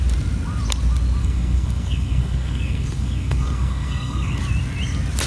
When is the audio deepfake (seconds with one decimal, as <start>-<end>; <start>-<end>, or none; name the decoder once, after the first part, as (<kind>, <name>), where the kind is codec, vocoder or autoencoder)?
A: 1.2-4.4 (codec, SNAC)

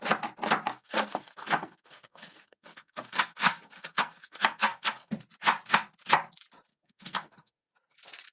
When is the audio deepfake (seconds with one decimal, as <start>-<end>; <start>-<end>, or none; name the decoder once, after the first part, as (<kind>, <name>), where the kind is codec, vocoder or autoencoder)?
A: 0.7-5.1 (codec, SNAC); 6.7-7.7

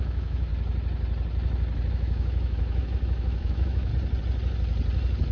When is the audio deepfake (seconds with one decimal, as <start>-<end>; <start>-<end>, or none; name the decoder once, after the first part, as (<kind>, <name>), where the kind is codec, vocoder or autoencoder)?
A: 0.0-0.5 (autoencoder, DAC-VAE); 1.9-3.9

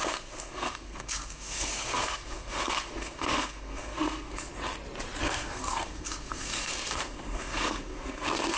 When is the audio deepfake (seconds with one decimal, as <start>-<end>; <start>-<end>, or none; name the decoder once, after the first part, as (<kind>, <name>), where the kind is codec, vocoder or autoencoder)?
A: 0.0-4.5 (codec, SNAC); 5.2-8.6

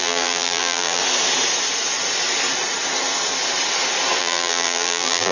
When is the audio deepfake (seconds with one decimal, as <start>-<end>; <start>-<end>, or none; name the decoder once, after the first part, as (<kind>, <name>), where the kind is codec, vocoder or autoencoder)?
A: 0.0-1.0 (vocoder, BigVGAN v2); 4.2-5.3

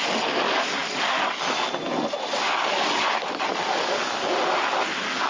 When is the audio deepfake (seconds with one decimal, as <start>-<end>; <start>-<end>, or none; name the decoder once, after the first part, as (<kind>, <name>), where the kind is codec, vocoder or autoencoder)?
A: none